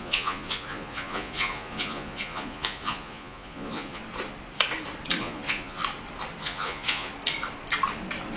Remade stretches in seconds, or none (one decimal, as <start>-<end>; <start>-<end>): 0.0-4.0; 5.2-5.8; 6.4-7.1